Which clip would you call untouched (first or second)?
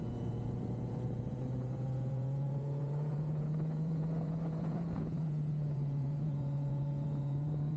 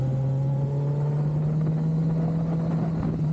second